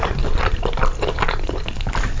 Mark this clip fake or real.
real